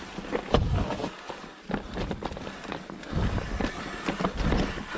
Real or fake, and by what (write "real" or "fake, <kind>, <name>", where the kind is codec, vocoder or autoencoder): real